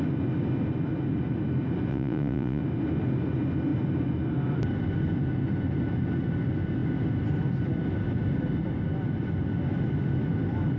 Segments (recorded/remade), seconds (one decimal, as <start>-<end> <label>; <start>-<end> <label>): 0.0-1.9 recorded; 1.9-2.6 remade; 2.6-10.8 recorded